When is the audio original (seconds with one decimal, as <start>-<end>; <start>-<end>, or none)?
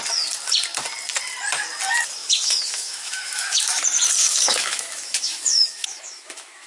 0.0-2.2; 3.8-4.2